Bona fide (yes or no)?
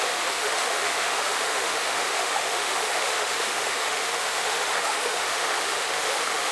no